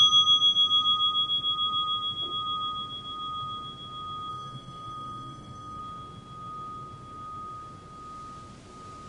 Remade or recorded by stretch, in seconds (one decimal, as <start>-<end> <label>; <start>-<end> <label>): 0.0-4.3 recorded; 4.3-5.8 remade; 5.8-9.1 recorded